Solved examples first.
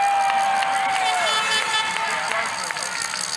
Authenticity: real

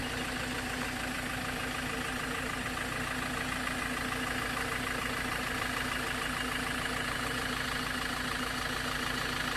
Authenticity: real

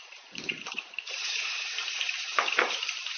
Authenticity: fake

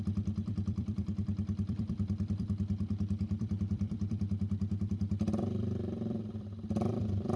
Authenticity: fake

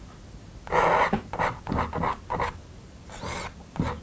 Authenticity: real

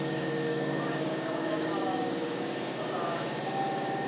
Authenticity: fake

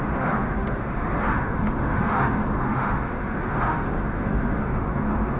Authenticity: fake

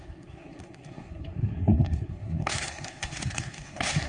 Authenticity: fake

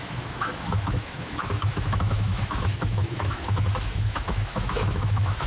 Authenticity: fake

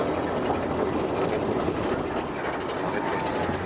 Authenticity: real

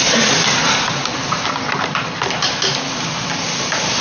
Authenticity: real